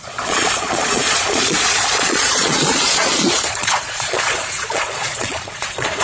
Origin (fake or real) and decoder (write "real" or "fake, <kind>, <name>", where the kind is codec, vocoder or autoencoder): fake, vocoder, Vocos